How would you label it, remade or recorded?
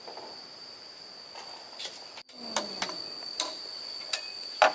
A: recorded